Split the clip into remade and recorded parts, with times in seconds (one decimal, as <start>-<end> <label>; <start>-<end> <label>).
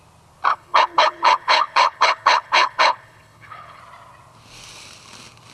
0.0-0.5 recorded; 0.5-3.8 remade; 3.8-5.5 recorded